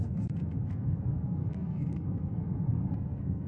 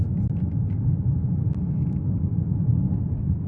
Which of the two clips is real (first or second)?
second